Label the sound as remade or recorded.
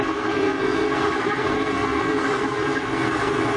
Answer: remade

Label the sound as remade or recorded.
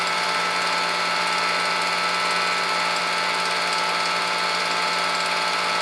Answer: recorded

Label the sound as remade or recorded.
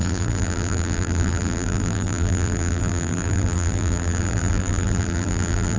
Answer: remade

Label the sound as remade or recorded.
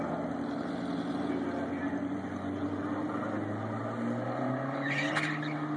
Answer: recorded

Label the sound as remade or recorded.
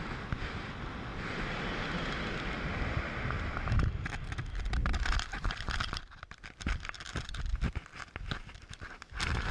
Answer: recorded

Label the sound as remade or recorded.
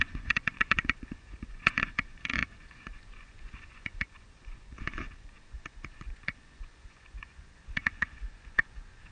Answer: remade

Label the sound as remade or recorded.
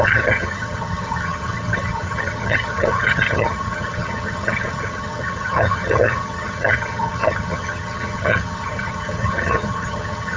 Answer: remade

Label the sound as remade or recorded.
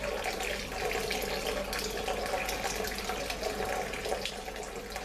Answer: recorded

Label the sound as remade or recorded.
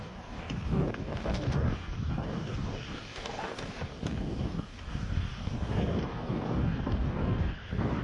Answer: remade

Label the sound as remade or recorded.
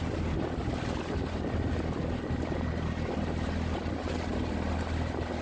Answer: recorded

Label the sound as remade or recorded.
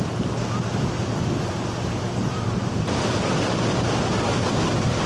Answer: recorded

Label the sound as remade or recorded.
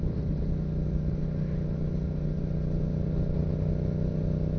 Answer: recorded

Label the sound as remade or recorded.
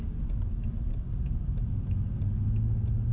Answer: recorded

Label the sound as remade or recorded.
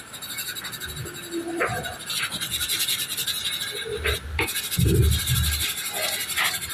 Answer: recorded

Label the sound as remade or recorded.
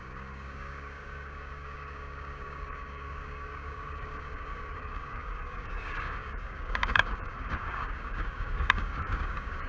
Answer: remade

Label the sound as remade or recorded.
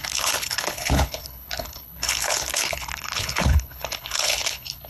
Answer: remade